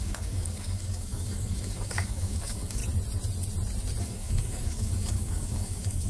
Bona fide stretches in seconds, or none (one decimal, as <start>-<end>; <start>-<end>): 2.8-4.0